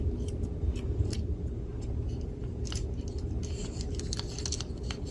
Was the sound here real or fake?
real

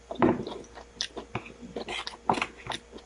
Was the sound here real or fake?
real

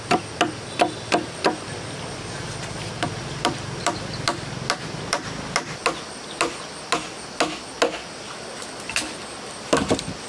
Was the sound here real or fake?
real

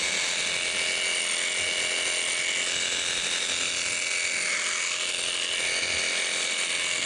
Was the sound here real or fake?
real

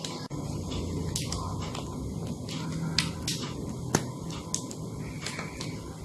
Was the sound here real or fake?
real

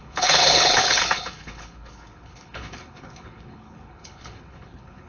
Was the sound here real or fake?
fake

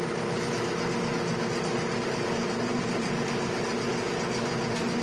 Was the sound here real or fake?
real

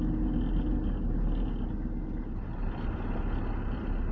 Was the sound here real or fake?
real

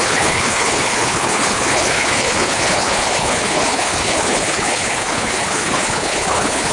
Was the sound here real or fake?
fake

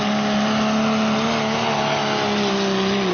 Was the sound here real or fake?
real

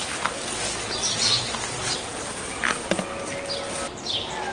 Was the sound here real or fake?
real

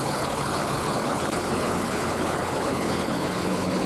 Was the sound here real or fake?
fake